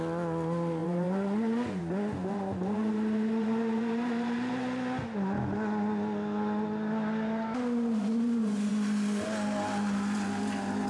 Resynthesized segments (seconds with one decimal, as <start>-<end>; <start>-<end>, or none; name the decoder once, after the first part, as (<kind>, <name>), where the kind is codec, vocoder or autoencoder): 0.8-1.8 (vocoder, BigVGAN v2); 2.2-4.5